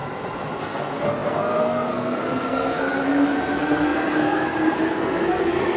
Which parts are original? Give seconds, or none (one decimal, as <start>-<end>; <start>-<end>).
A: 0.0-0.6